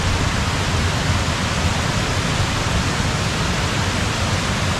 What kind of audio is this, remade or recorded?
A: recorded